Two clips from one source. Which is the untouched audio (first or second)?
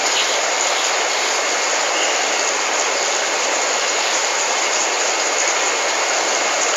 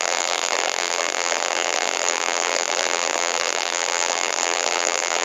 first